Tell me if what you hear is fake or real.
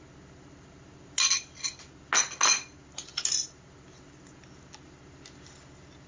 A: real